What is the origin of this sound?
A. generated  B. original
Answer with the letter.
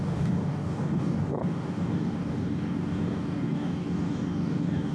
A